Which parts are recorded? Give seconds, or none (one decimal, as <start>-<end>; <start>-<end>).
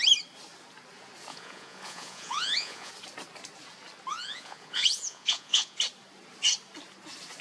0.0-1.3; 2.9-4.1; 5.8-7.4